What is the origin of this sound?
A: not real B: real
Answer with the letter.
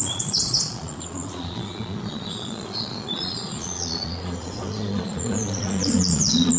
A